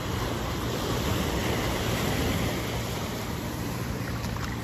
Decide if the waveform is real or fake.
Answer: fake